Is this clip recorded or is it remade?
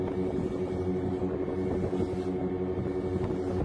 recorded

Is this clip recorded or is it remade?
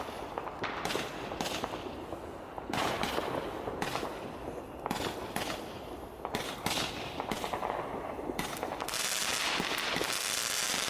recorded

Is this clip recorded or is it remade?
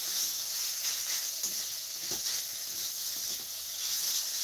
remade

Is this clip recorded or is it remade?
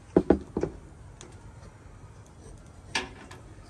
recorded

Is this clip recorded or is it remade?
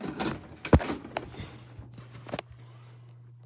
recorded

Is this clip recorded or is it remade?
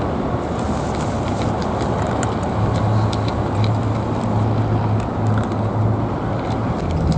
recorded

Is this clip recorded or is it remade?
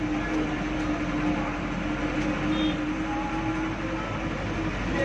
recorded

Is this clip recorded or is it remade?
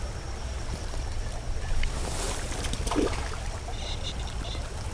recorded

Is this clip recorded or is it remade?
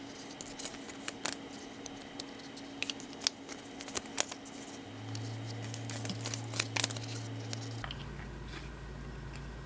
recorded